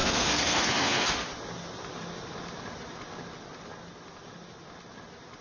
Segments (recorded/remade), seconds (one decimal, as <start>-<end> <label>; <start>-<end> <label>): 0.0-1.1 remade; 1.1-5.4 recorded